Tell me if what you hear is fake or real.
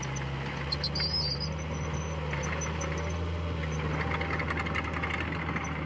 real